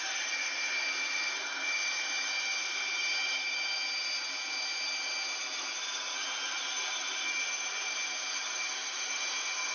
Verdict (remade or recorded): recorded